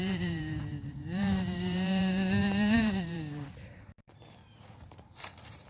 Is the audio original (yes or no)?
no